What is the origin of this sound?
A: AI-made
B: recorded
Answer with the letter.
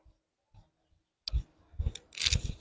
B